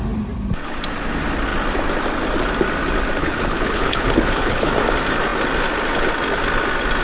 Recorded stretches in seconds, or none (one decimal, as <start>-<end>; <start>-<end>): 0.0-3.2; 4.7-7.0

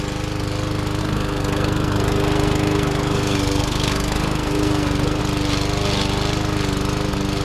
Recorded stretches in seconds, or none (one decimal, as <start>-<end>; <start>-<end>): 0.0-1.0; 5.2-7.4

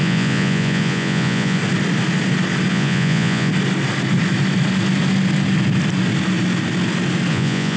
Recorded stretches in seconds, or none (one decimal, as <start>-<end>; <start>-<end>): 1.6-2.7; 3.5-7.3

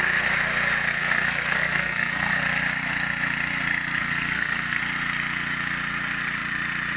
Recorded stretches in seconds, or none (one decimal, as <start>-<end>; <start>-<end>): 0.0-1.0; 2.4-4.0; 4.8-7.0